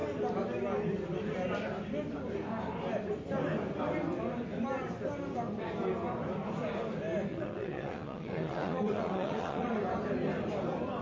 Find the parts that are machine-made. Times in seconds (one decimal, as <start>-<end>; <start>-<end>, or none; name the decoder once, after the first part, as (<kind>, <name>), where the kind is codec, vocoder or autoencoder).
7.3-9.8 (vocoder, WaveNeXt)